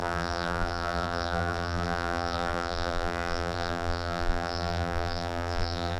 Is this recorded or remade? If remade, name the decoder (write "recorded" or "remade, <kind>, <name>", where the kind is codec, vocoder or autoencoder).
remade, vocoder, BigVGAN v2